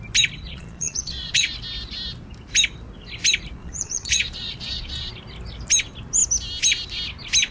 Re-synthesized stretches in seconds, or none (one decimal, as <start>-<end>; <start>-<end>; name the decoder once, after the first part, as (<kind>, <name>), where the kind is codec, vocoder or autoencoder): 0.5-1.5 (vocoder, Vocos); 3.6-5.1